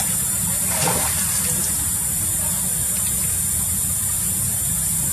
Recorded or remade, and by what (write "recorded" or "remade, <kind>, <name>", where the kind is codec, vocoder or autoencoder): recorded